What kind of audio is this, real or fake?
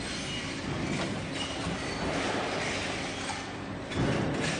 real